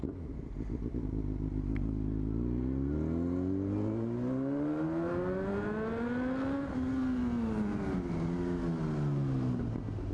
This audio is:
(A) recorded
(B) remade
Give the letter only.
A